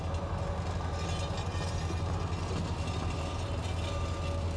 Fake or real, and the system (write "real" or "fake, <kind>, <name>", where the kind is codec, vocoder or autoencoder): real